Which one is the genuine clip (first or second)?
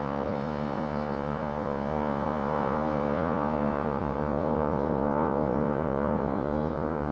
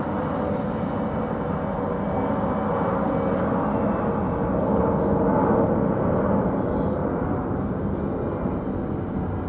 second